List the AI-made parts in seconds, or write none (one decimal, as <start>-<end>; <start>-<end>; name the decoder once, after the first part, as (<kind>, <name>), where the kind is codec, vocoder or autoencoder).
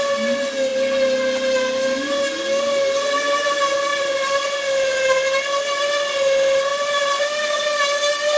3.9-4.4 (vocoder, BigVGAN v2); 6.7-7.6